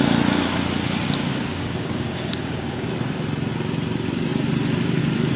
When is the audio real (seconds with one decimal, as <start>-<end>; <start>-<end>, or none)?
0.0-1.3; 2.9-5.4